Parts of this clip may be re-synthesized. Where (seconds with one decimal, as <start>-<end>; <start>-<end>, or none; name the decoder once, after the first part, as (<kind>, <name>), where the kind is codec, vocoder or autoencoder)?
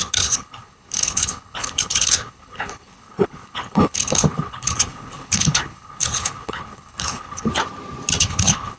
0.0-7.5 (codec, HILCodec); 8.2-8.8